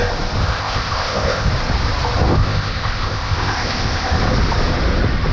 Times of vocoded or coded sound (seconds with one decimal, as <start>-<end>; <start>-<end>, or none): 0.4-1.5; 2.3-4.2